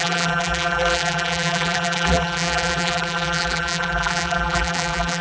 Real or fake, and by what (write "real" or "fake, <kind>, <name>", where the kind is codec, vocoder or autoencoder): fake, vocoder, BigVGAN v2